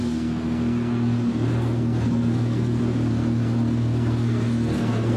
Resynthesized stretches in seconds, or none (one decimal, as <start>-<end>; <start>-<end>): 0.0-5.2